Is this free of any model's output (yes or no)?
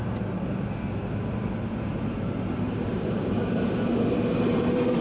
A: no